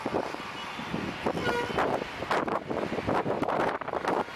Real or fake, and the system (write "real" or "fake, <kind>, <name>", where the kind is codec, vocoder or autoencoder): real